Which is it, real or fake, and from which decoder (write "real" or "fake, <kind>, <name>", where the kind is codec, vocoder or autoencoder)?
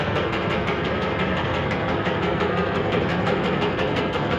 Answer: fake, codec, SNAC